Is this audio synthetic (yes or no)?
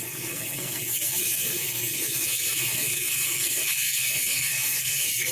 yes